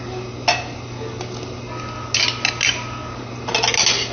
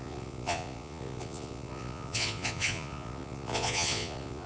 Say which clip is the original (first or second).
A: first